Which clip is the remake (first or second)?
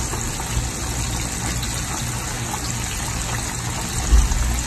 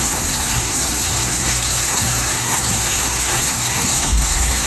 second